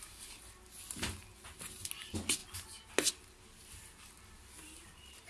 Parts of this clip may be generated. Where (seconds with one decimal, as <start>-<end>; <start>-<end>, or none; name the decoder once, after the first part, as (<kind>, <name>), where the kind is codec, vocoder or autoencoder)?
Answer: none